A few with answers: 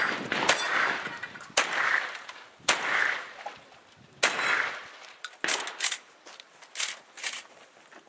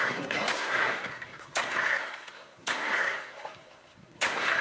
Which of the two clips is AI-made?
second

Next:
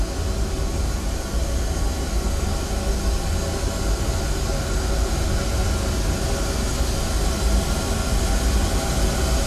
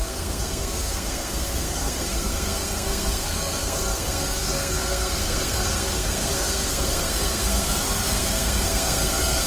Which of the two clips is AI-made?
second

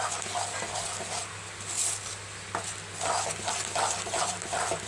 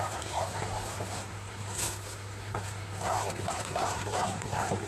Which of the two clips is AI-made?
second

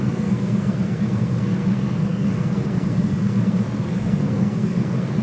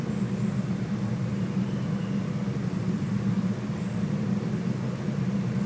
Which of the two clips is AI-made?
first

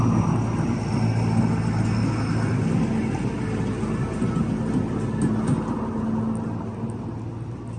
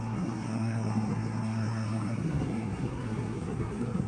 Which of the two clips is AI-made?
second